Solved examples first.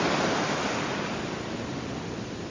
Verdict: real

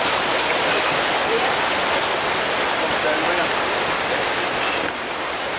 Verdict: real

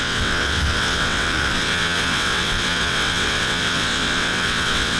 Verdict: fake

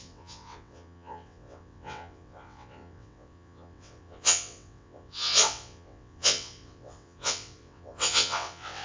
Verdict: fake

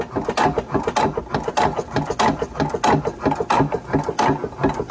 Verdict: real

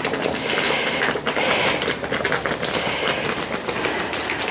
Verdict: real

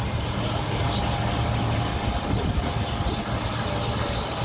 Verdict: real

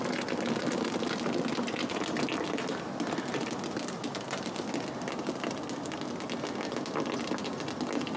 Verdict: real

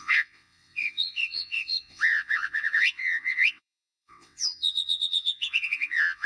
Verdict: fake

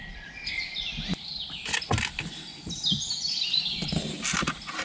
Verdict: real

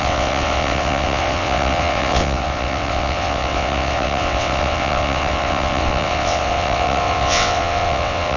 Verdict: fake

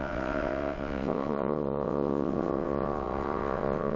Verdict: fake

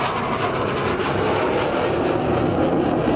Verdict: real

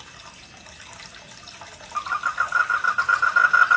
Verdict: real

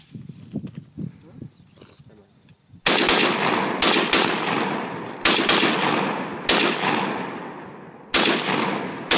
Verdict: real